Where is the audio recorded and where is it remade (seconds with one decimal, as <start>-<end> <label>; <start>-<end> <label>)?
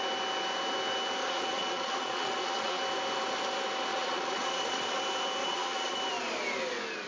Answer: 0.0-1.2 recorded; 1.2-2.8 remade; 2.8-3.9 recorded; 3.9-5.0 remade; 5.0-5.4 recorded; 5.4-6.0 remade; 6.0-7.1 recorded